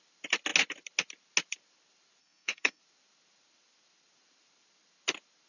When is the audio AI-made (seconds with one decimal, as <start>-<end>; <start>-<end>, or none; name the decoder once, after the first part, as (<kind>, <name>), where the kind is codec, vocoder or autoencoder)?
2.2-2.8 (codec, SNAC)